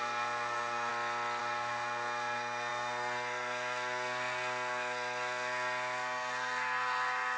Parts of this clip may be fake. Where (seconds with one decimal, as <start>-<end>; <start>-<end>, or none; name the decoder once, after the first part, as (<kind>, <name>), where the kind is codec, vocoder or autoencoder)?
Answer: 0.0-0.9 (codec, SNAC); 1.4-7.4